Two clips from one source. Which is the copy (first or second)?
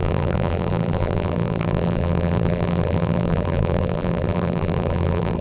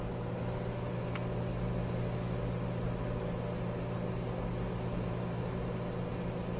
first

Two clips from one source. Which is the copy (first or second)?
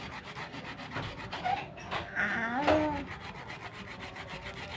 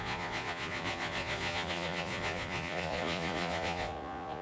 second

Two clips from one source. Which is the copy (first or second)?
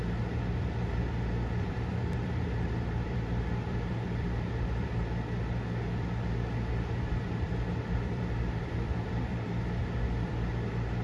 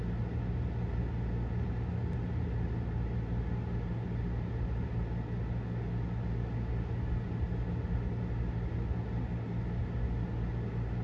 first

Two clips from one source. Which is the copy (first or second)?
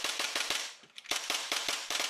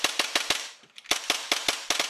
first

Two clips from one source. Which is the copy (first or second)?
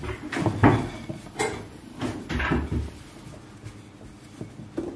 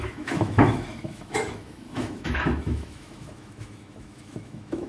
second